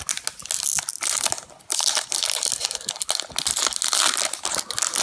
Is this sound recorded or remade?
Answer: recorded